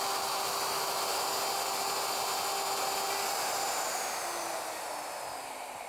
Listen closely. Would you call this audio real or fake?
real